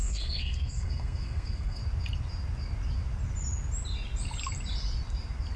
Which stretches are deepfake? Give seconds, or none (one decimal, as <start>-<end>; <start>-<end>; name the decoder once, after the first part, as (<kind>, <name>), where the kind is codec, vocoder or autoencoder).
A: 0.0-1.8 (codec, SNAC)